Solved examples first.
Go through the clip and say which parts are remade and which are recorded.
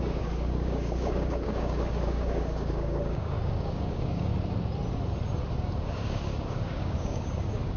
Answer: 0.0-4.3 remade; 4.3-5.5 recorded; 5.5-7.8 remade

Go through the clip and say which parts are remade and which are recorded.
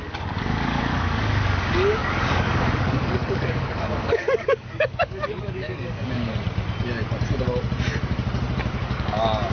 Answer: 0.0-6.3 remade; 6.3-8.8 recorded; 8.8-9.5 remade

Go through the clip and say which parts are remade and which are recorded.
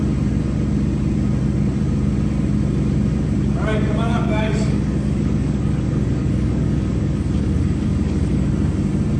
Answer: 0.0-4.1 recorded; 4.1-8.5 remade; 8.5-9.2 recorded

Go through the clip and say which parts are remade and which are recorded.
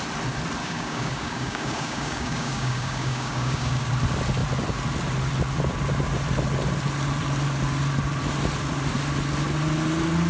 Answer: 0.0-0.6 recorded; 0.6-3.9 remade; 3.9-10.3 recorded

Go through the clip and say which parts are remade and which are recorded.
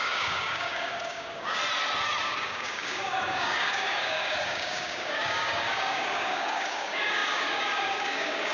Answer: 0.0-1.6 remade; 1.6-2.2 recorded; 2.2-8.5 remade